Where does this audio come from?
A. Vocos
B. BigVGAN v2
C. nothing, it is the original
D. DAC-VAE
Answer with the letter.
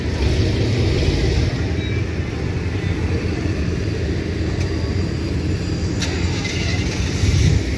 C